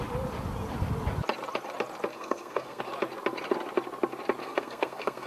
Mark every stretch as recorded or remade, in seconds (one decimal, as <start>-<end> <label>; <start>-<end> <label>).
0.0-2.1 recorded; 2.1-2.8 remade; 2.8-4.4 recorded; 4.4-5.3 remade